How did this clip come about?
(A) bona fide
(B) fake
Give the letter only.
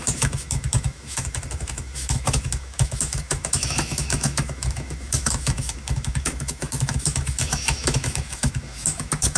B